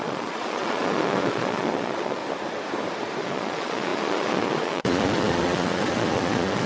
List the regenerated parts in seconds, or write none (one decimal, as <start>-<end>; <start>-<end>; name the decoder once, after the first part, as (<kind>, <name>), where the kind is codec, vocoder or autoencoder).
0.0-2.2 (vocoder, Vocos); 3.2-6.7